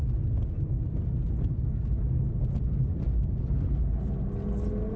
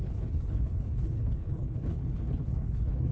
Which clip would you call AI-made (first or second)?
second